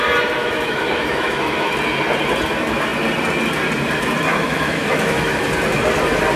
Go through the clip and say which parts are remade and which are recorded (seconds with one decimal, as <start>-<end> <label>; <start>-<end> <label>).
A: 0.0-0.4 recorded; 0.4-1.7 remade; 1.7-4.3 recorded; 4.3-5.4 remade; 5.4-6.4 recorded